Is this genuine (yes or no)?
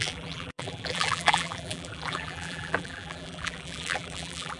no